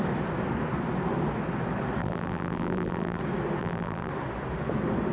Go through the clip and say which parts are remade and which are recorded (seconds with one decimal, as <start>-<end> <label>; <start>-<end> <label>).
0.0-2.0 recorded; 2.0-3.2 remade; 3.2-3.6 recorded; 3.6-4.1 remade; 4.1-5.1 recorded